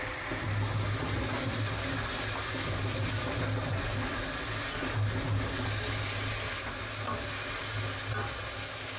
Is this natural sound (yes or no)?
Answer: yes